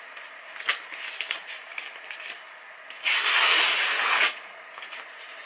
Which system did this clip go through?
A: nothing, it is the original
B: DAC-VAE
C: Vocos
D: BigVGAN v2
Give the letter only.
A